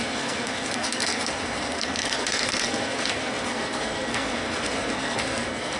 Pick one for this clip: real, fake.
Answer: fake